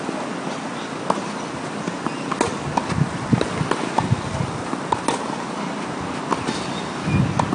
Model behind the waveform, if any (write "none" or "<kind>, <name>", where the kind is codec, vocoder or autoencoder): none